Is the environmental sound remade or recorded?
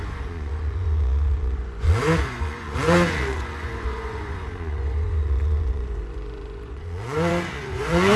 remade